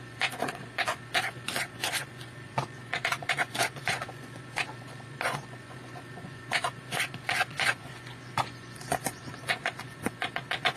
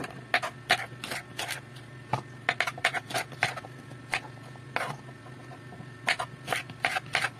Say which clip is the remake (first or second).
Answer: first